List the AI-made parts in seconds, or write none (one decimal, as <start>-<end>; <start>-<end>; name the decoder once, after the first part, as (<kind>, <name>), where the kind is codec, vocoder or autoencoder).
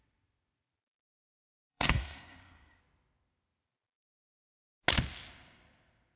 1.7-2.8 (codec, SNAC)